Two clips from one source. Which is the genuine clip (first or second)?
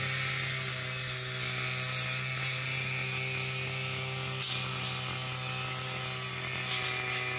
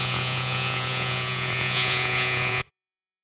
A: first